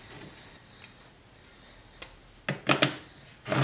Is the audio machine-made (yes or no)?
no